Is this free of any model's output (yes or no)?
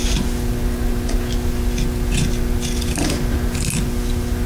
yes